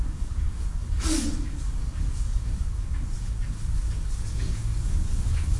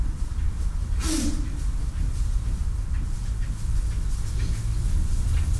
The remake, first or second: first